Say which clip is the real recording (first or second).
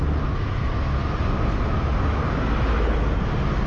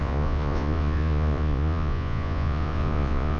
first